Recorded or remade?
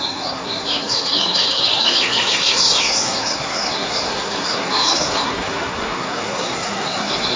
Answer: remade